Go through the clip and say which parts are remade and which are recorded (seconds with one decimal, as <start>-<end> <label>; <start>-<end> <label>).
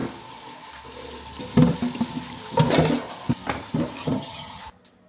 0.0-4.0 recorded; 4.0-4.6 remade; 4.6-5.1 recorded